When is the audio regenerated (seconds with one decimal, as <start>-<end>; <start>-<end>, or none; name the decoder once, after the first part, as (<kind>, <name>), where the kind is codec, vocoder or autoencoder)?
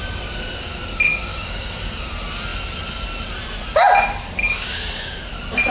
1.3-2.0 (codec, DAC); 4.4-5.2